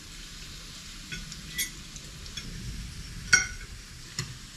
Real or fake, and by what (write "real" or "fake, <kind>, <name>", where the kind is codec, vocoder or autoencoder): real